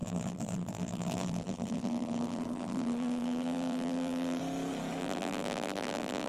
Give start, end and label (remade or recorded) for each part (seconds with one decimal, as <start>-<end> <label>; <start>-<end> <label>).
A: 0.0-4.4 remade; 4.4-5.0 recorded; 5.0-6.3 remade